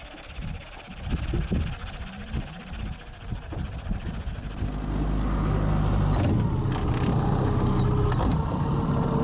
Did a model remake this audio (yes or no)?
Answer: no